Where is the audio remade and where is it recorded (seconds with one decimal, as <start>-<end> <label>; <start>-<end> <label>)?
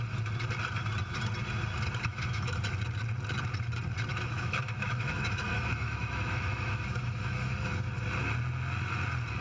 0.0-2.1 recorded; 2.1-2.6 remade; 2.6-4.1 recorded; 4.1-7.9 remade; 7.9-9.4 recorded